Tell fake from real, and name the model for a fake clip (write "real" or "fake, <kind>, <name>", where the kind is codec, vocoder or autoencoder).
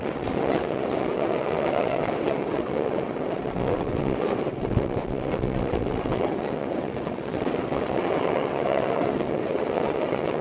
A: fake, vocoder, WaveNeXt